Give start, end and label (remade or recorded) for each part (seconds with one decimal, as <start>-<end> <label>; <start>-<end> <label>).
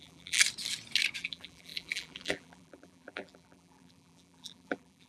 0.0-0.4 remade; 0.4-1.2 recorded; 1.2-5.1 remade